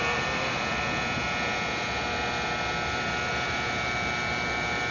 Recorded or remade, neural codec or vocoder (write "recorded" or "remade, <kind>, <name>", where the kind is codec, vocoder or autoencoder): recorded